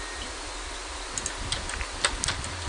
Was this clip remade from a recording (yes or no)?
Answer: no